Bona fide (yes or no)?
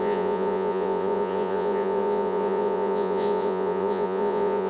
no